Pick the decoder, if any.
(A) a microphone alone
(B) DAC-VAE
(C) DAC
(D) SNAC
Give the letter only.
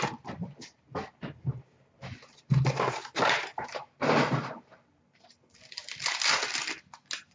A